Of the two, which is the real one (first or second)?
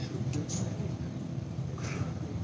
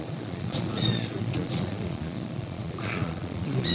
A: first